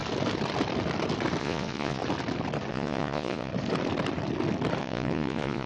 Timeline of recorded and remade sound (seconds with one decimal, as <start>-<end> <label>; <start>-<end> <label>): 0.0-1.4 recorded; 1.4-2.0 remade; 2.0-2.7 recorded; 2.7-3.5 remade; 3.5-4.8 recorded; 4.8-5.7 remade